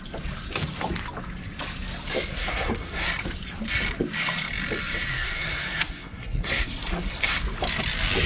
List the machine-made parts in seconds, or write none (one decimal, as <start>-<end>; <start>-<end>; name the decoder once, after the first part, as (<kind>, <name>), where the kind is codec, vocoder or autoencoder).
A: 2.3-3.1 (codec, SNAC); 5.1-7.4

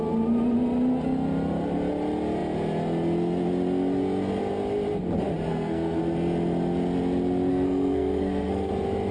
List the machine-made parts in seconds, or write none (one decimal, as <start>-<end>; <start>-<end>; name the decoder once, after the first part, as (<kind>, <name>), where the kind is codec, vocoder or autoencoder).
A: 5.5-6.0 (codec, SNAC); 7.5-8.7

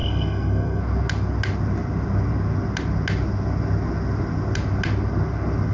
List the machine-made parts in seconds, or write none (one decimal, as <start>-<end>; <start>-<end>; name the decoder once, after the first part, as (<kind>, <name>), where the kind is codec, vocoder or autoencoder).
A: 0.0-0.8 (codec, SNAC)

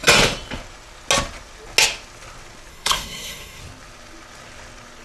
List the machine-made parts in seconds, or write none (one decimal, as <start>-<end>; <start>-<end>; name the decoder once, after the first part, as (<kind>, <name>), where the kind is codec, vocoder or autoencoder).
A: 2.7-3.6 (codec, SNAC)

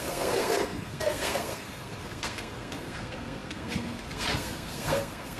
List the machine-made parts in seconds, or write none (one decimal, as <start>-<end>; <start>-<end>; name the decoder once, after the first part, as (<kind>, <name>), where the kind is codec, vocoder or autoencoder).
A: 0.0-5.4 (codec, SNAC)